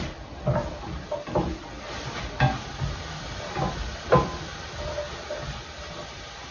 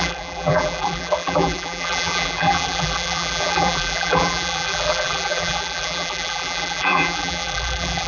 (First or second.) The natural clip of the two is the first